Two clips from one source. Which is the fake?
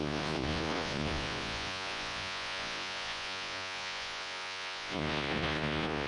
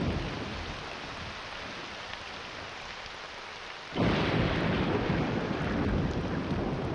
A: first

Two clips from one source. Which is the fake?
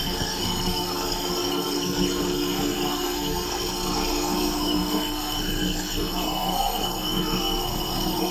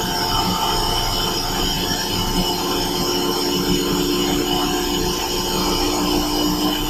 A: first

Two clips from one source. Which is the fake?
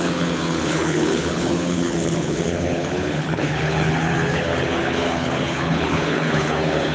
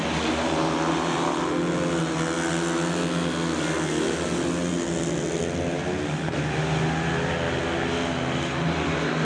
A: first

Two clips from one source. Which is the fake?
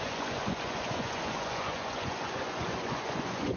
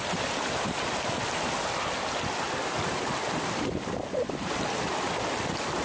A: first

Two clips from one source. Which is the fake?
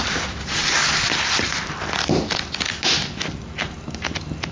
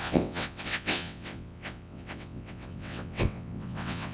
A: second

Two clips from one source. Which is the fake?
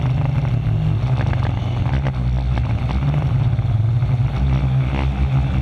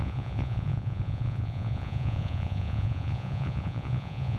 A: second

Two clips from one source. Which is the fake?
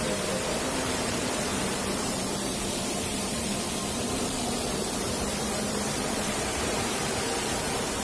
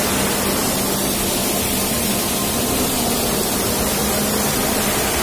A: first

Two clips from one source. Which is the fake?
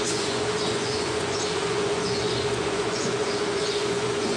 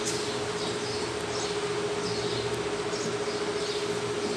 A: first